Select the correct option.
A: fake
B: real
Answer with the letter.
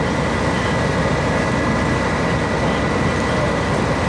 B